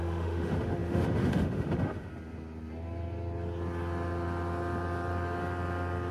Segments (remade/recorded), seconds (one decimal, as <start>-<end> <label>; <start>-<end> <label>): 0.0-2.1 remade; 2.1-6.1 recorded